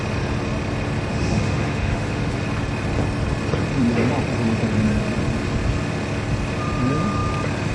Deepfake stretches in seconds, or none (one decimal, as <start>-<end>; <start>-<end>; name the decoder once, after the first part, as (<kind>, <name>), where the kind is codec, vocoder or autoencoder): 1.1-2.4 (autoencoder, DAC-VAE)